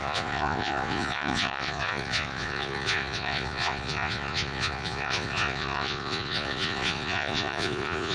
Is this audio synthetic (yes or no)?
yes